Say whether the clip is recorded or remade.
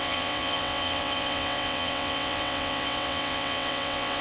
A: remade